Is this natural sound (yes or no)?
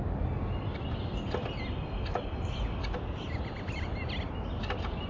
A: yes